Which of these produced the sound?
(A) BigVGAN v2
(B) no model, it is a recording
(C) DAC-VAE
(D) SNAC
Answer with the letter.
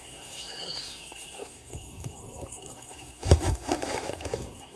D